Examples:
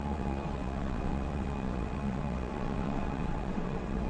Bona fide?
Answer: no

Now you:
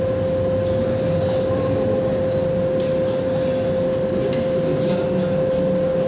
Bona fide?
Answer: yes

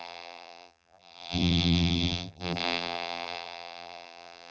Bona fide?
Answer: no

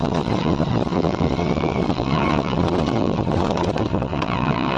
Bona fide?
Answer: no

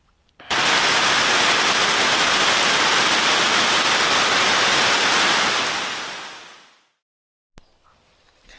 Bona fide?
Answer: yes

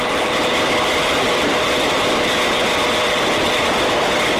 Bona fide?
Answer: no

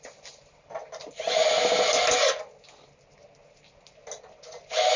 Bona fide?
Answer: yes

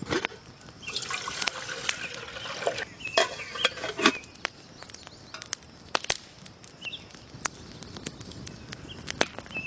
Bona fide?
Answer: yes